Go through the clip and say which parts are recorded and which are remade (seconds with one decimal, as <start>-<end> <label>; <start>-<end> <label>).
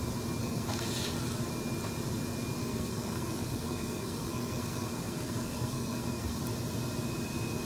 0.0-0.4 recorded; 0.4-0.9 remade; 0.9-2.6 recorded; 2.6-6.4 remade; 6.4-7.6 recorded